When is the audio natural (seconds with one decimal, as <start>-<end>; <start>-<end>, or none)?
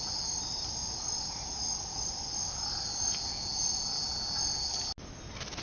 0.0-5.6